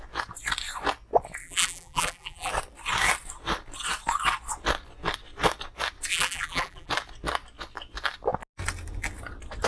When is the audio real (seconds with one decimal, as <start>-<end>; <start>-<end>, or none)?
0.0-1.4; 2.5-6.1; 6.9-9.7